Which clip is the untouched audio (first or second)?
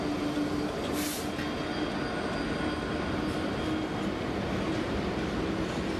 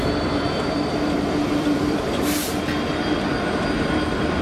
first